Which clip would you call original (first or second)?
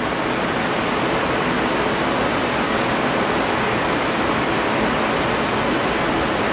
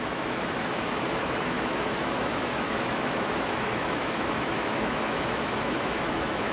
first